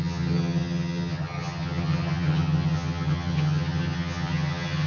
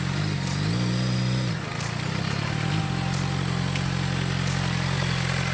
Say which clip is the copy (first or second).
first